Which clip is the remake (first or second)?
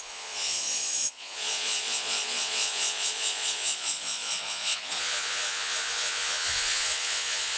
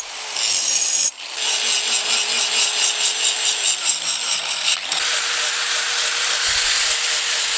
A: first